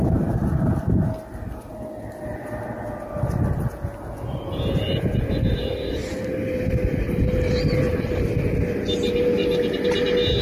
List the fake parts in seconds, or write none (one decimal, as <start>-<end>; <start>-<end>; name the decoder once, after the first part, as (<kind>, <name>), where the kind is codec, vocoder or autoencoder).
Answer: 6.0-8.3 (vocoder, BigVGAN v2)